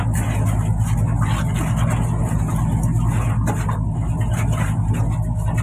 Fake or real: real